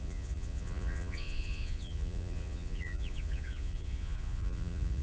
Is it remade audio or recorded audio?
remade